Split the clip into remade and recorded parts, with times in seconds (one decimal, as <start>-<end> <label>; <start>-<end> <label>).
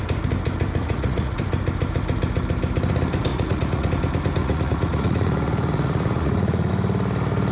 0.0-0.8 recorded; 0.8-1.4 remade; 1.4-3.3 recorded; 3.3-3.9 remade; 3.9-4.4 recorded; 4.4-6.7 remade; 6.7-7.5 recorded